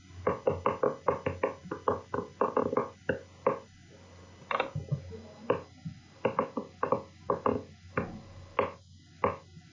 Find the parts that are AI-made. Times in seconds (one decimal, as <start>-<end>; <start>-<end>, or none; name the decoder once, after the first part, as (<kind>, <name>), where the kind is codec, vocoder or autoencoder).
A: none